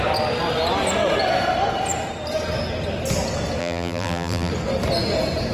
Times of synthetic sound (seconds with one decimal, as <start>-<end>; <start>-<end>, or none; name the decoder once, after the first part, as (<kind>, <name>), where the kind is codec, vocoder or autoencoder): 3.6-4.5 (vocoder, BigVGAN v2)